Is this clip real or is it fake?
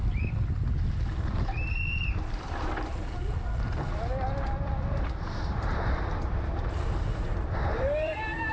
fake